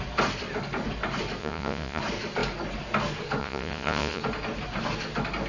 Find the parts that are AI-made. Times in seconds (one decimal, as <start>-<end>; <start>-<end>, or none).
1.4-2.0; 3.4-4.2